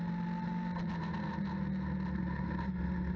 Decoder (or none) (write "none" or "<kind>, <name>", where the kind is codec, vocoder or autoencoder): none